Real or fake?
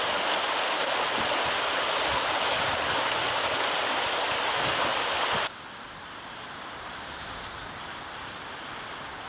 real